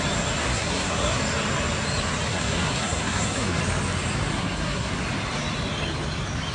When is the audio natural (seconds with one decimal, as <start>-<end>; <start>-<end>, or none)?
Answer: 0.0-0.4; 1.2-2.3; 3.6-4.3; 4.9-6.5